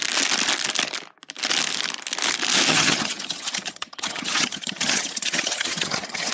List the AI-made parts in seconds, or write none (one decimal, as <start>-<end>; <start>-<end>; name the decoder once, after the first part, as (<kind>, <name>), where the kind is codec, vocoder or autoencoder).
2.7-6.3 (vocoder, HiFi-GAN)